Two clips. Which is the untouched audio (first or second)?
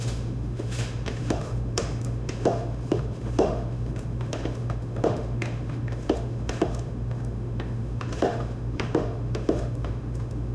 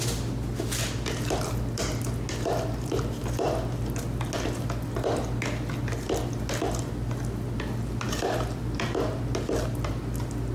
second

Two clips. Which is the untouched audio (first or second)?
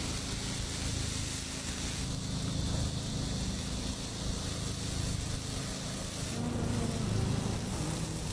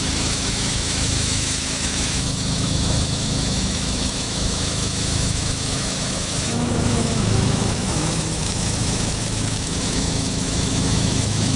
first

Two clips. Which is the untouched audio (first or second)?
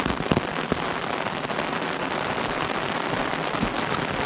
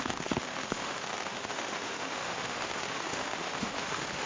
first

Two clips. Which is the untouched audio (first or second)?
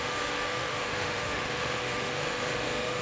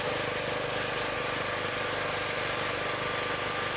second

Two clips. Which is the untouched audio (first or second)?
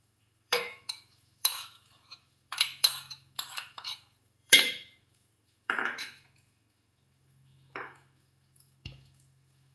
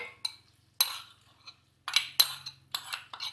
second